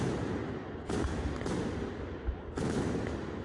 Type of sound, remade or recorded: recorded